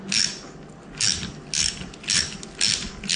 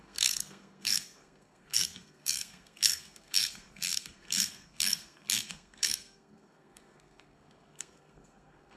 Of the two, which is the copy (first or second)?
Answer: second